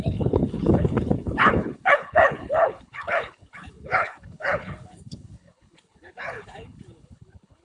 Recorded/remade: remade